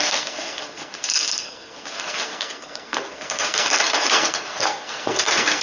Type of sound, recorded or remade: remade